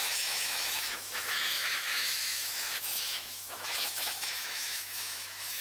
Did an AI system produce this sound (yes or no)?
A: yes